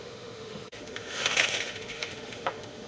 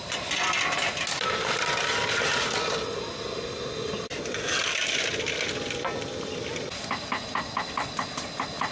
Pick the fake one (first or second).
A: first